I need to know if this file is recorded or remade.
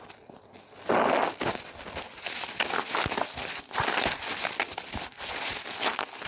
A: recorded